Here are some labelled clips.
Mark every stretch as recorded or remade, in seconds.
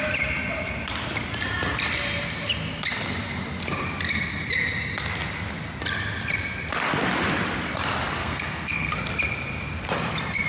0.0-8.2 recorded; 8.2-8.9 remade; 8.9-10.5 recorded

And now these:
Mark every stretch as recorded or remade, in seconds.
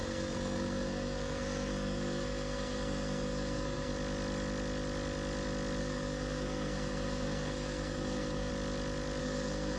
0.0-3.9 remade; 3.9-5.8 recorded; 5.8-8.5 remade; 8.5-9.2 recorded; 9.2-9.8 remade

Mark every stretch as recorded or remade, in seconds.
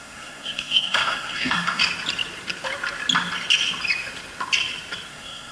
0.0-1.8 remade; 1.8-5.1 recorded; 5.1-5.5 remade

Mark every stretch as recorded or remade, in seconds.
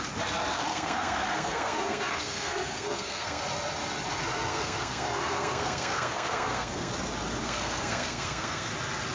0.0-0.5 recorded; 0.5-3.4 remade; 3.4-4.5 recorded; 4.5-6.9 remade; 6.9-7.4 recorded; 7.4-8.7 remade; 8.7-9.1 recorded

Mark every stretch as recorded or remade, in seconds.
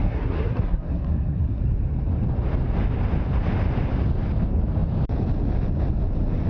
0.0-1.6 remade; 1.6-6.5 recorded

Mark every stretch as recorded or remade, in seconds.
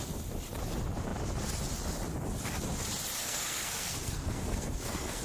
0.0-3.2 recorded; 3.2-5.2 remade